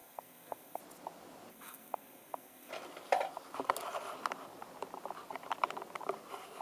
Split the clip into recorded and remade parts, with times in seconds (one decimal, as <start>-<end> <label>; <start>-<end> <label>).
0.0-0.8 remade; 0.8-1.5 recorded; 1.5-2.7 remade; 2.7-6.6 recorded